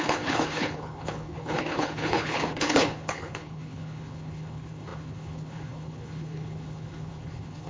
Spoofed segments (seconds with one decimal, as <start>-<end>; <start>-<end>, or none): 0.0-7.7

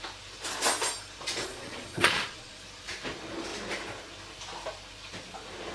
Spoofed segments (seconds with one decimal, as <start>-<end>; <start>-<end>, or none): 1.5-2.6

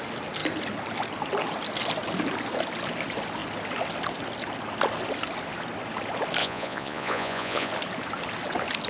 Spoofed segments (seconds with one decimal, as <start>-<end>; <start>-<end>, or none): 6.4-7.7

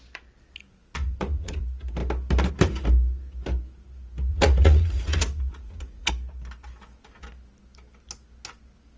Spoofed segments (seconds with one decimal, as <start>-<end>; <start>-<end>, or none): 0.8-1.6; 4.3-6.1

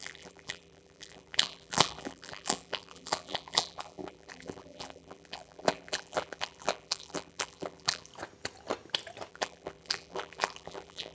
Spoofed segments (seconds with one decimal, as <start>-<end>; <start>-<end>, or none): 0.0-8.1; 9.3-11.1